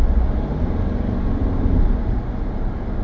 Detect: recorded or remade recorded